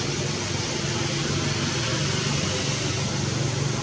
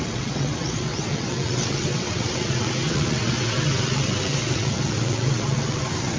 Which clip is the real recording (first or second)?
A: first